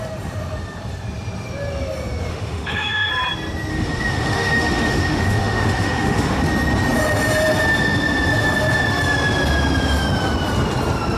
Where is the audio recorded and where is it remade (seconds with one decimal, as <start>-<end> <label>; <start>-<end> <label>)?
0.0-2.3 recorded; 2.3-3.1 remade; 3.1-3.7 recorded; 3.7-6.4 remade; 6.4-11.2 recorded